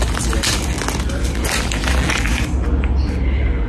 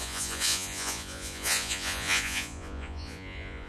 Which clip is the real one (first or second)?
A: first